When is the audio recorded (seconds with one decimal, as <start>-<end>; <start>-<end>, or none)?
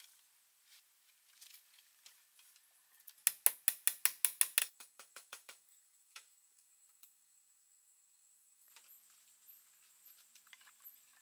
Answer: 0.0-4.6; 8.7-11.2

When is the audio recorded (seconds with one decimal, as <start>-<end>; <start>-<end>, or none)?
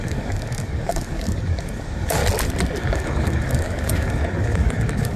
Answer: 2.2-2.8